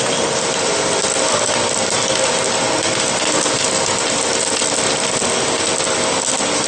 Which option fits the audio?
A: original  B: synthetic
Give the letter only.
A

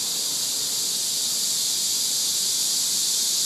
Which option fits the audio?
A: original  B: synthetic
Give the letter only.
A